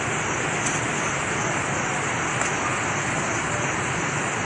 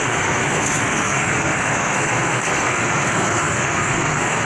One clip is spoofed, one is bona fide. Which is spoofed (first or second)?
second